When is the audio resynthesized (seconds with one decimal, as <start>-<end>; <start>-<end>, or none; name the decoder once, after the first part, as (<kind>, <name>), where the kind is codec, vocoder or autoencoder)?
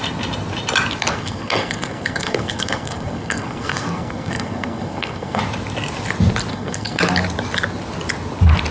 1.1-5.4 (codec, SNAC); 6.5-7.0